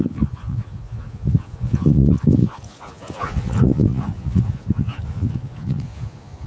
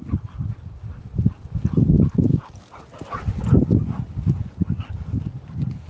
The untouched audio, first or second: second